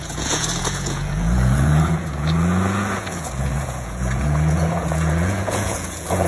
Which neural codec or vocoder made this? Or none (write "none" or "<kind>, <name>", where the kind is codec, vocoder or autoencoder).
vocoder, Vocos